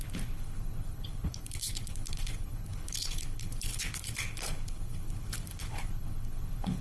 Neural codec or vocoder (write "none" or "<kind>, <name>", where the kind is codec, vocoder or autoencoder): codec, HILCodec